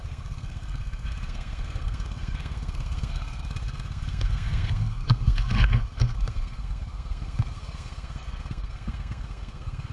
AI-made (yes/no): yes